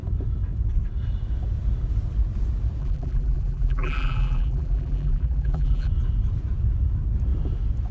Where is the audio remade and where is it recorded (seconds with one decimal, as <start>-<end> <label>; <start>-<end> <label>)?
0.0-2.8 recorded; 2.8-5.9 remade; 5.9-7.9 recorded